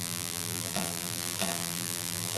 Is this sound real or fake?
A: fake